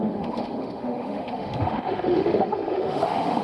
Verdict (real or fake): fake